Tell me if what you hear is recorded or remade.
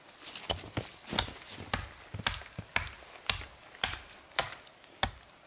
recorded